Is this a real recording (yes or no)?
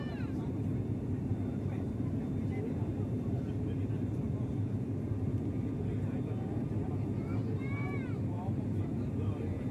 no